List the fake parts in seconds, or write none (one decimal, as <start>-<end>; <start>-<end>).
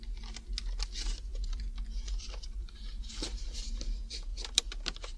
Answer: 1.3-3.8; 4.3-5.2